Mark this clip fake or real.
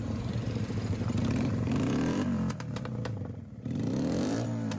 fake